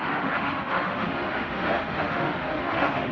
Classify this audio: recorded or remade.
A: remade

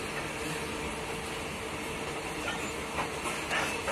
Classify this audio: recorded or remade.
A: recorded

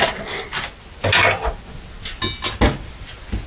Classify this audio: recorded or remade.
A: recorded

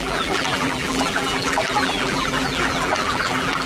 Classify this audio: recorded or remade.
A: remade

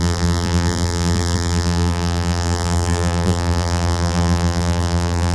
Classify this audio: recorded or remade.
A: remade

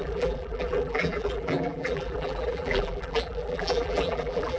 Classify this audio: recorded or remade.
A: remade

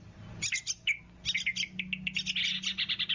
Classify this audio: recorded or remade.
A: recorded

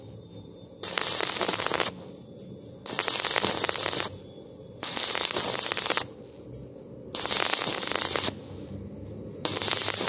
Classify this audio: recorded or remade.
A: recorded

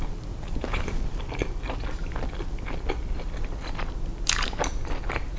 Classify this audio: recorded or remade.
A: recorded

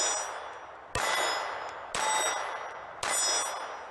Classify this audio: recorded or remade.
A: recorded